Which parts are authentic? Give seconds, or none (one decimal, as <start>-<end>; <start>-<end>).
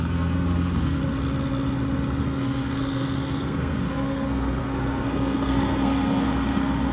1.0-2.2